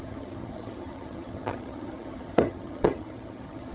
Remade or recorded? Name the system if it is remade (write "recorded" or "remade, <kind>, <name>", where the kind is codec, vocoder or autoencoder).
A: remade, vocoder, HiFi-GAN